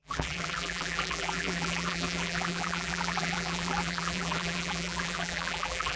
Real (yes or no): no